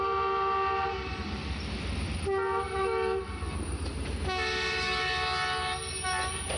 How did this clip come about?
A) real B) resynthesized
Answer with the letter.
A